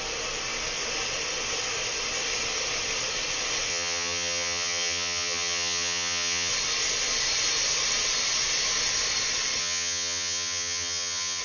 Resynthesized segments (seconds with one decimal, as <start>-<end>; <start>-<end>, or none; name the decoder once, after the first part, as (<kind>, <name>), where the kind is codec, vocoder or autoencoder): 3.7-6.5 (vocoder, HiFi-GAN); 9.6-11.4

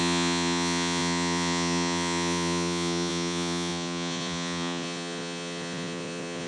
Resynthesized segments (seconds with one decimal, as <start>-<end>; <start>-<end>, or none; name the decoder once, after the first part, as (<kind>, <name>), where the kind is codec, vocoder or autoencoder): 0.0-6.5 (vocoder, Vocos)

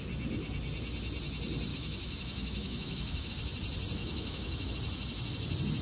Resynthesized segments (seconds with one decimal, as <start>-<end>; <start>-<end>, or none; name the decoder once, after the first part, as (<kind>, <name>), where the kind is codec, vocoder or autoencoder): 1.7-3.3 (autoencoder, DAC-VAE); 4.0-4.7

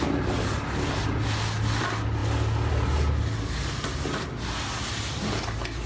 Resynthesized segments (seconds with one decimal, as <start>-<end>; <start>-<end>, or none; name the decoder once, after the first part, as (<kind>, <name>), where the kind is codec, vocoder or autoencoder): none